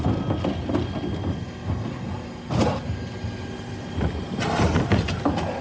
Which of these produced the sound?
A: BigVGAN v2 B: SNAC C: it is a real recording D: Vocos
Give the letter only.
C